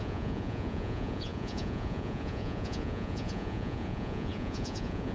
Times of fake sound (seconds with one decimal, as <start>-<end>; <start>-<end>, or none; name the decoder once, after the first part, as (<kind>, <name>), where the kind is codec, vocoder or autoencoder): 0.0-5.1 (vocoder, Vocos)